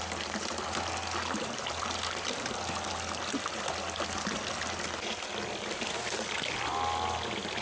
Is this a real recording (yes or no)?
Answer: yes